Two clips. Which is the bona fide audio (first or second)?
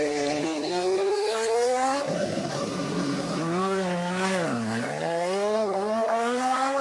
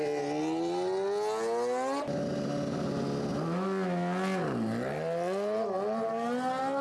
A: second